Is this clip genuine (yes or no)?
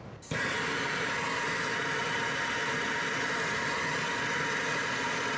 yes